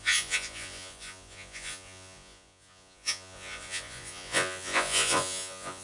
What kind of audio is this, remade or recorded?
remade